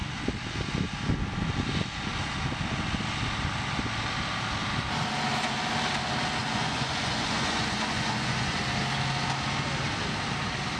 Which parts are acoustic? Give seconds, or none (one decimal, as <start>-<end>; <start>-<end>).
0.0-6.4; 8.6-10.8